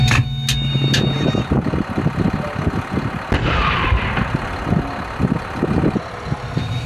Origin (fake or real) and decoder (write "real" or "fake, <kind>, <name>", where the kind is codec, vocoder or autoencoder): real